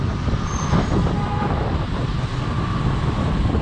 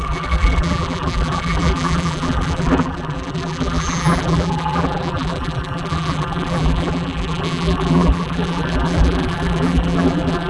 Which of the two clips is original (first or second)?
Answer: first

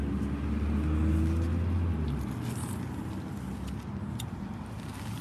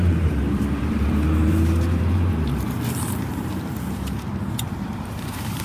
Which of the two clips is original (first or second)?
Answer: first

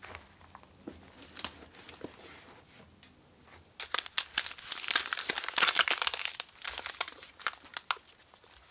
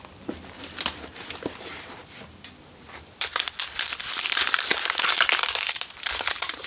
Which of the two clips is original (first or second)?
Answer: first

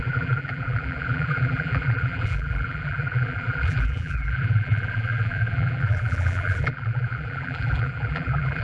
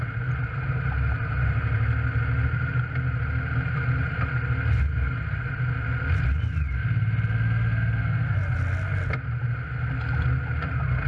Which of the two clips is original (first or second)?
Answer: second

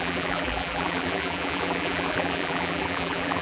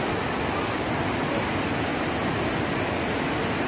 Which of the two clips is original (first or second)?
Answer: second